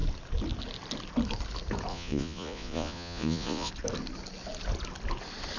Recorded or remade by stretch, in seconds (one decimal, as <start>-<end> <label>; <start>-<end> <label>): 0.0-1.9 recorded; 1.9-3.7 remade; 3.7-5.6 recorded